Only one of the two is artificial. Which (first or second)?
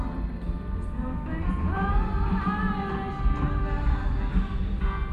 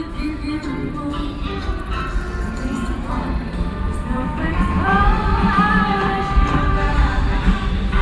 second